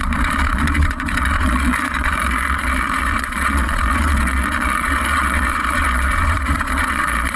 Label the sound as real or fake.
fake